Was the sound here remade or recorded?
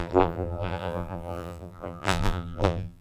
remade